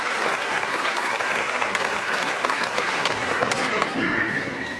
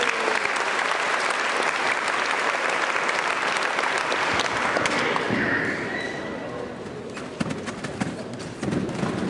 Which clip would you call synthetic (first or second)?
first